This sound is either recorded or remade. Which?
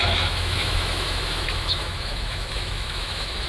remade